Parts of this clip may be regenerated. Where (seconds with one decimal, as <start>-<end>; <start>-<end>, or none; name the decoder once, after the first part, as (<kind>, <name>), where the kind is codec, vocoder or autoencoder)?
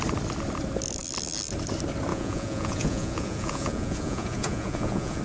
2.1-5.2 (vocoder, Vocos)